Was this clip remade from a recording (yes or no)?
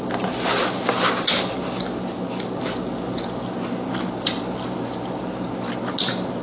no